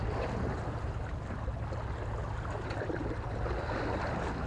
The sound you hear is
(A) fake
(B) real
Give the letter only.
B